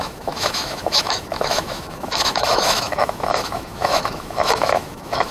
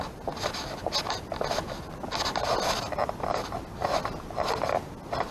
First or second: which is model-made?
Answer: first